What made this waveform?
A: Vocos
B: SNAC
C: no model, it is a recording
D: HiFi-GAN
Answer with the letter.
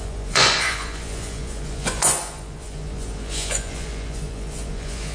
A